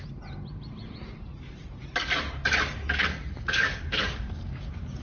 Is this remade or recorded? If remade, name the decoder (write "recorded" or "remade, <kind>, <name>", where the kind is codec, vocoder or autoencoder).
remade, vocoder, BigVGAN v2